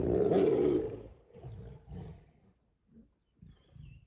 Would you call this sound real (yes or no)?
yes